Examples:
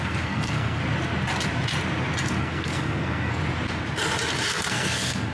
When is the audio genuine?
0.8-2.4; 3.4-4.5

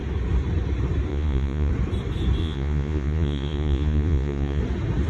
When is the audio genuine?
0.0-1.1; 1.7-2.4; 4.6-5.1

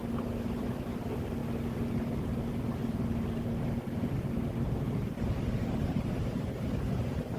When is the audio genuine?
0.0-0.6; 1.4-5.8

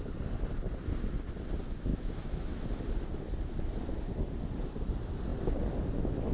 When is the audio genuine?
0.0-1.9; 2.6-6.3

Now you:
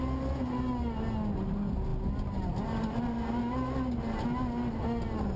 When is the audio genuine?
0.0-5.4